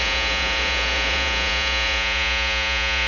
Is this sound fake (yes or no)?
yes